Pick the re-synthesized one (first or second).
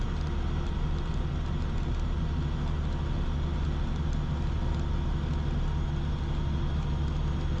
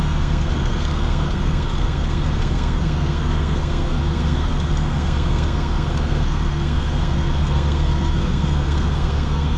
second